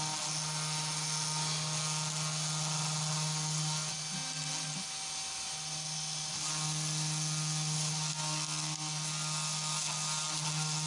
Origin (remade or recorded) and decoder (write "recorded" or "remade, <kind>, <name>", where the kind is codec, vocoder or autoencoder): recorded